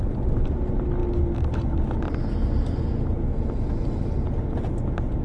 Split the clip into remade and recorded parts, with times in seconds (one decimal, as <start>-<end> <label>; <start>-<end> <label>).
0.0-5.2 recorded

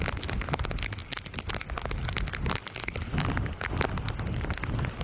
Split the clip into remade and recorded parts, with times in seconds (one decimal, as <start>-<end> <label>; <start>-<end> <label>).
0.0-5.0 recorded